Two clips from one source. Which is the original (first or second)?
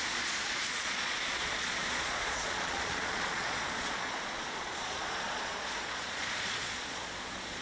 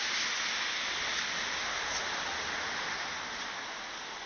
second